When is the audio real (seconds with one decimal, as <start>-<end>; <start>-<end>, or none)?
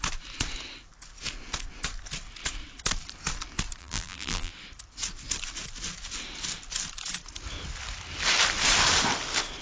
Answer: 0.0-3.8; 4.5-9.6